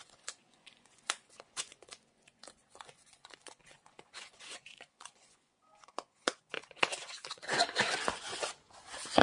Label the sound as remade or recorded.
remade